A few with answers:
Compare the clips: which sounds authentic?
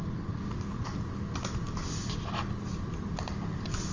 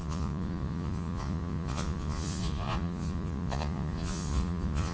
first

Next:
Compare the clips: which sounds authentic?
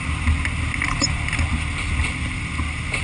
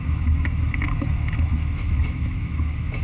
first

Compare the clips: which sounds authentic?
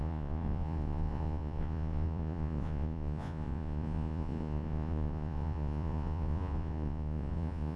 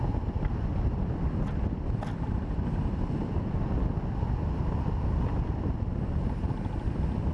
second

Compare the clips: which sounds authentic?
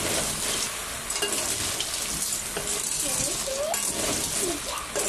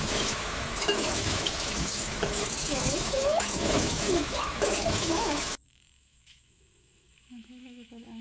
first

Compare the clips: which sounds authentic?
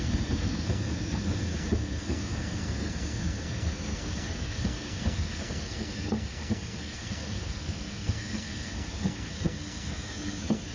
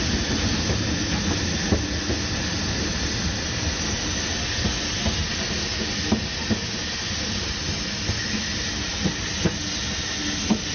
second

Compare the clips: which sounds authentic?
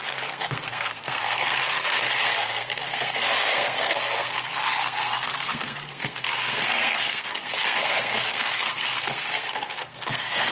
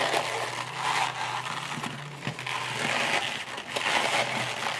second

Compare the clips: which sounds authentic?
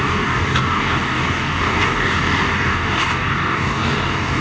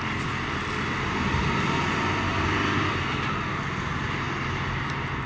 second